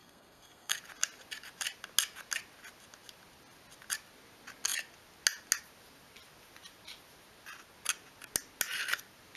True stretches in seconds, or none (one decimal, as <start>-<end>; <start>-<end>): 0.8-9.4